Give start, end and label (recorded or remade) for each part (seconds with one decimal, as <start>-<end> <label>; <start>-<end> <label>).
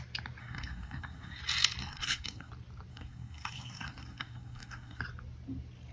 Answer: 0.0-0.4 recorded; 0.4-1.4 remade; 1.4-1.8 recorded; 1.8-2.5 remade; 2.5-2.9 recorded; 2.9-5.0 remade; 5.0-5.9 recorded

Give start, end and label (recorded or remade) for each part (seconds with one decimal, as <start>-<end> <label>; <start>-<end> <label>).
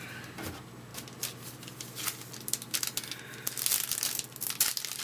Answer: 0.0-5.0 recorded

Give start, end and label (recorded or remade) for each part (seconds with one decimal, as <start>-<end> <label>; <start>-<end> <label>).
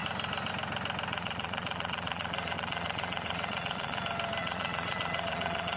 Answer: 0.0-1.1 recorded; 1.1-4.0 remade; 4.0-4.4 recorded; 4.4-5.8 remade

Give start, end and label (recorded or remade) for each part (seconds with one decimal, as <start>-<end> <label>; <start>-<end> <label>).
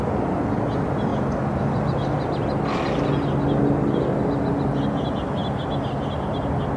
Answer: 0.0-6.8 recorded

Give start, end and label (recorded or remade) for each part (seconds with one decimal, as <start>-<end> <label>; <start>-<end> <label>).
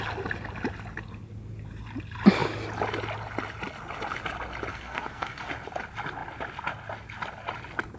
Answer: 0.0-4.7 recorded; 4.7-5.5 remade; 5.5-8.0 recorded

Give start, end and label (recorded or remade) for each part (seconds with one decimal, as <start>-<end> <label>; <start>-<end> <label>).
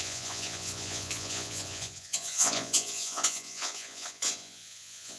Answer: 0.0-5.2 remade